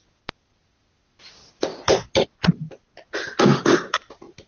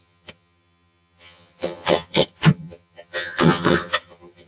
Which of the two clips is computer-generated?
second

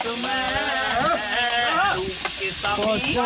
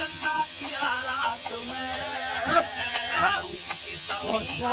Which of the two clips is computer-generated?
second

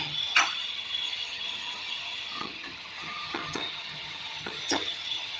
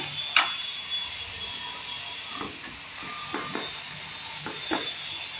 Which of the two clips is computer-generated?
first